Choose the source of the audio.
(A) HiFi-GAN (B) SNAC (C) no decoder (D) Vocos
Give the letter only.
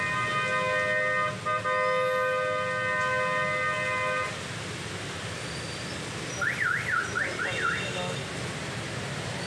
C